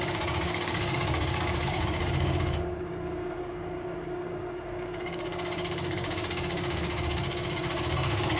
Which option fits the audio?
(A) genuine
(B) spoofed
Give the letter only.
B